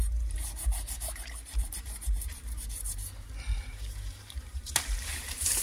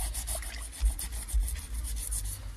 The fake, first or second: first